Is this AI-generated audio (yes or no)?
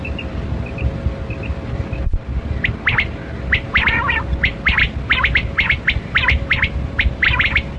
no